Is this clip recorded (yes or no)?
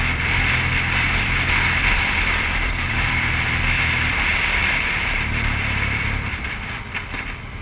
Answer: no